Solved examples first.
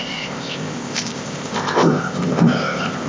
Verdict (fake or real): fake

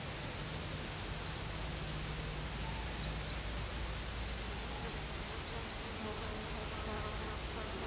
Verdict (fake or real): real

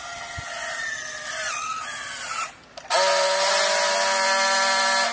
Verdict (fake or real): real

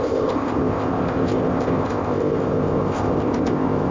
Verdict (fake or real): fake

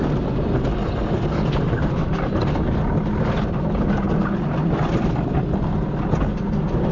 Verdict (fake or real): real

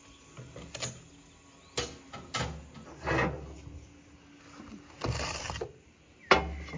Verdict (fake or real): real